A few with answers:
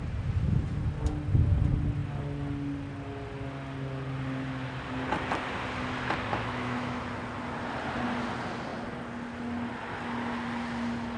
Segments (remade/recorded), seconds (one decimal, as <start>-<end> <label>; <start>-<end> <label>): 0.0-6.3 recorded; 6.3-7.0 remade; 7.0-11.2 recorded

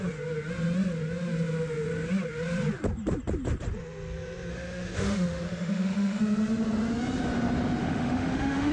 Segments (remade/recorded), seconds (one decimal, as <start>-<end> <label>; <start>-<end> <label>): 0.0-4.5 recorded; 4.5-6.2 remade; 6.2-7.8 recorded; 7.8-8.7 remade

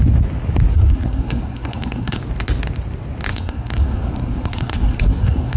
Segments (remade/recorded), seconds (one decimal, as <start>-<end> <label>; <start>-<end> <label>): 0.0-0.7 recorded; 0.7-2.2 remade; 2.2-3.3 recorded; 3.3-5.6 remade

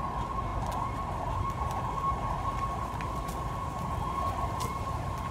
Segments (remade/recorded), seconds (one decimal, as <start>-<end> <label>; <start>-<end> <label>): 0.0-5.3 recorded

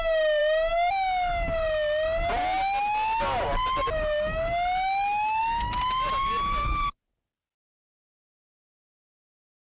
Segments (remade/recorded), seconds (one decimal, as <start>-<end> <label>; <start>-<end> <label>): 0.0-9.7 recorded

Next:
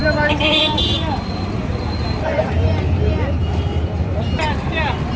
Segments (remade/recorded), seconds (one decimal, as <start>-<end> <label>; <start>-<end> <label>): 0.0-5.2 recorded

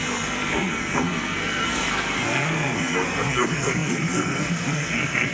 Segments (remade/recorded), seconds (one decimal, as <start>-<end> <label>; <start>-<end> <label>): 0.0-5.3 remade